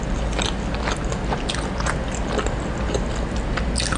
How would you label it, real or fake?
real